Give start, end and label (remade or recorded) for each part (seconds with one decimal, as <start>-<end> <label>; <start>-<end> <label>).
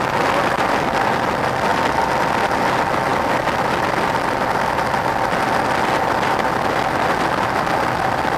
0.0-8.4 recorded